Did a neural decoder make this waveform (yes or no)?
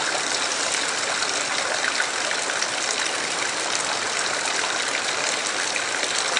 no